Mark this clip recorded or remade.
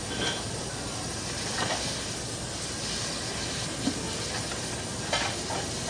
recorded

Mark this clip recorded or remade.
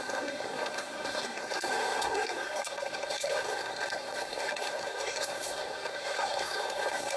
remade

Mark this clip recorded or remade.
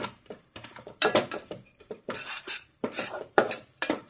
remade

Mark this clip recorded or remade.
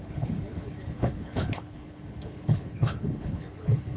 remade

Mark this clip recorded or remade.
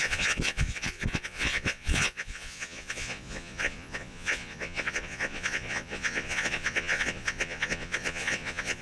remade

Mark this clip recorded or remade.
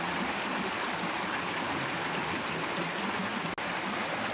recorded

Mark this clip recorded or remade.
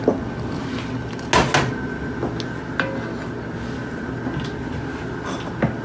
recorded